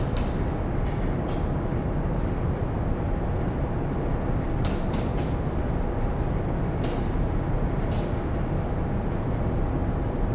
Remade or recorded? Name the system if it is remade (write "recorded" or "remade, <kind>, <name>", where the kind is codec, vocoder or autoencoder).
recorded